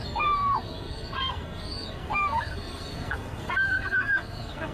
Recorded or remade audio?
remade